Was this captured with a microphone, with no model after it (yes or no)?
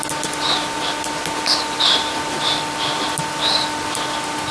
yes